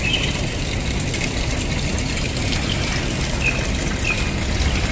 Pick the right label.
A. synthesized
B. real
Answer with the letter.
B